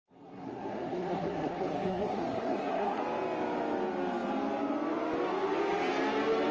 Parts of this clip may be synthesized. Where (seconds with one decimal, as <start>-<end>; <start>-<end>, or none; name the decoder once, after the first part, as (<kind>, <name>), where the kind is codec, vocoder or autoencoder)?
0.0-3.0 (codec, SNAC)